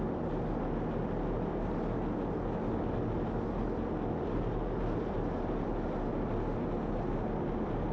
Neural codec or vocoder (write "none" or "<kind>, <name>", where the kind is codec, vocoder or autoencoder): none